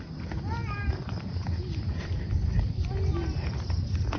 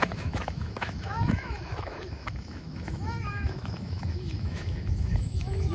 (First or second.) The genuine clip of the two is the first